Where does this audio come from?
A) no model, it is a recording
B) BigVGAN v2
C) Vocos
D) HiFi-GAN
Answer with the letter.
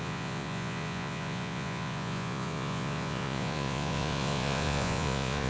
C